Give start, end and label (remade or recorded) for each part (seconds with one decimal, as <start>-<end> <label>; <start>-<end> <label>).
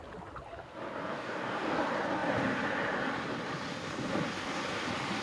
0.0-1.1 recorded; 1.1-1.8 remade; 1.8-5.2 recorded